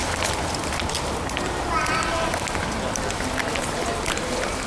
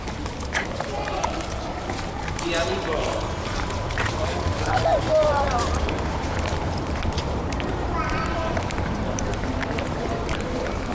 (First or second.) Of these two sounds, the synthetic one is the second